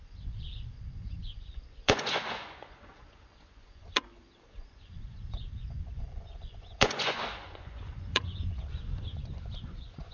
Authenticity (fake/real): fake